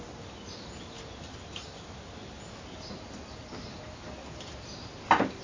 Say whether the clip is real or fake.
real